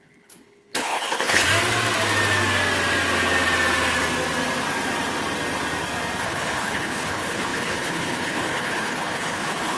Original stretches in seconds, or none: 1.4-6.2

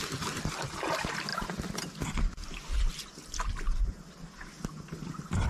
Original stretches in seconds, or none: 0.0-5.5

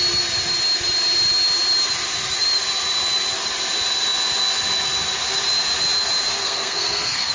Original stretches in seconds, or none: 0.0-6.4